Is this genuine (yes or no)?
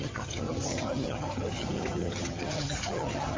no